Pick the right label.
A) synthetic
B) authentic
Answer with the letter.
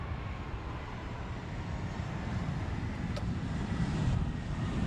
B